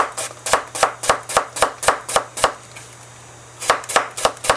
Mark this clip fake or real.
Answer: real